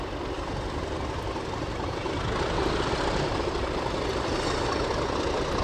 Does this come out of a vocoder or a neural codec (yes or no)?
no